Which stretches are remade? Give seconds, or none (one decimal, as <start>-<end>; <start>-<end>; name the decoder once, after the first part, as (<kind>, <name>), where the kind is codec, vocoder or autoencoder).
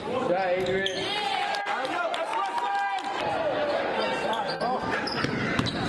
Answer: none